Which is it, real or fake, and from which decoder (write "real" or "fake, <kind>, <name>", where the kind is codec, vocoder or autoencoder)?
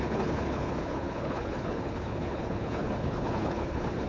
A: fake, codec, HILCodec